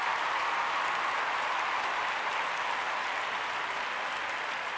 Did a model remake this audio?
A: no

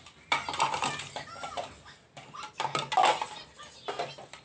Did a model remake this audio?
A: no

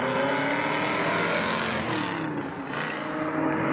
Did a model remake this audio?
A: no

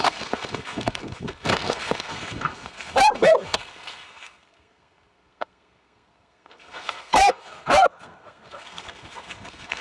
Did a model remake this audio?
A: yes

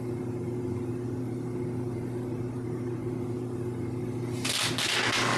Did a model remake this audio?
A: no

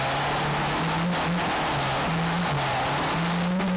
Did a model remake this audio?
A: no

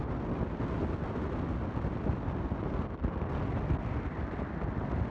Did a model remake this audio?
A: yes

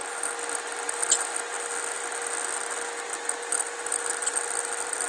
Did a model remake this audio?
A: no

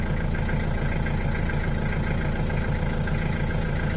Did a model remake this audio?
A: no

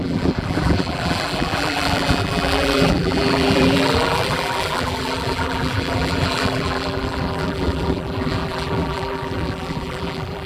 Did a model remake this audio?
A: yes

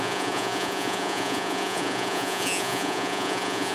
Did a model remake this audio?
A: yes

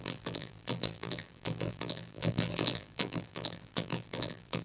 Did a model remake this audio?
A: yes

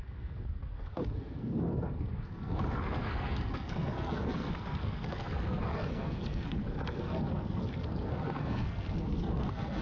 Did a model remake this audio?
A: yes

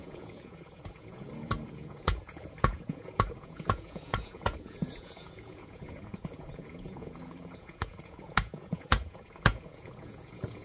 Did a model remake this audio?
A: yes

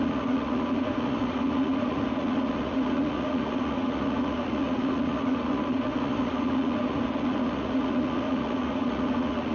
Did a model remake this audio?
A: yes